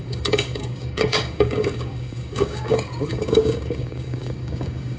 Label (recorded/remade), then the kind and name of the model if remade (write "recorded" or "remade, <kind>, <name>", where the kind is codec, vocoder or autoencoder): remade, codec, DAC